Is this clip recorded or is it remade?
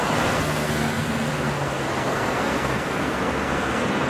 remade